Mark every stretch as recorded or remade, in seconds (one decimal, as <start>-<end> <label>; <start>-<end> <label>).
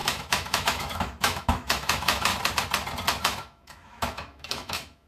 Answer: 0.0-2.3 remade; 2.3-3.2 recorded; 3.2-5.1 remade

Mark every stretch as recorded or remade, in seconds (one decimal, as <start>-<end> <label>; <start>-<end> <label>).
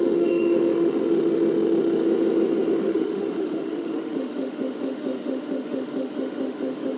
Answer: 0.0-2.0 remade; 2.0-2.7 recorded; 2.7-7.0 remade